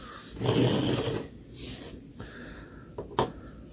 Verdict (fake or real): real